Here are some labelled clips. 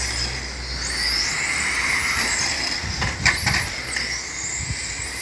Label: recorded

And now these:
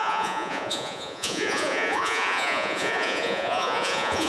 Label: remade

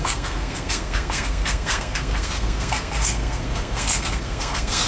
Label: remade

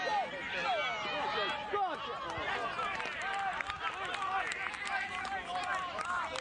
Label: recorded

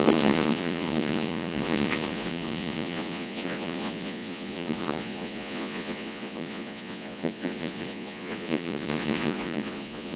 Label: remade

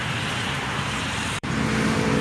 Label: remade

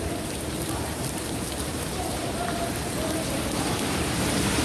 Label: remade